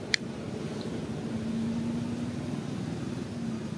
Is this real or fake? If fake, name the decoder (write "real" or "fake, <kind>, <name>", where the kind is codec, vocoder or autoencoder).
real